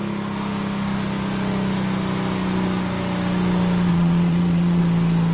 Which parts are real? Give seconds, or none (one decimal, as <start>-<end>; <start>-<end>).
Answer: 0.0-3.9; 4.8-5.3